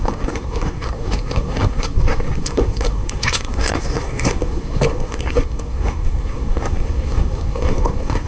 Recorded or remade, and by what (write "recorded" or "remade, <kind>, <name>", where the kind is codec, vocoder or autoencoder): remade, codec, SNAC